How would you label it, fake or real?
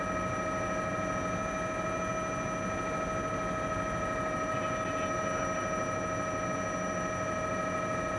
real